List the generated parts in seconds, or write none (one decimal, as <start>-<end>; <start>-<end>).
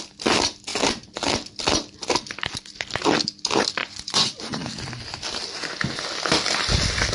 3.8-4.7